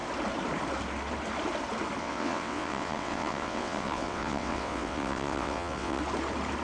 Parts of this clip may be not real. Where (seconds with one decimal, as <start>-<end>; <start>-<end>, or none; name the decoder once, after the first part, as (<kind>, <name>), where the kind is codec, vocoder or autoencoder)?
2.0-6.0 (vocoder, WaveNeXt)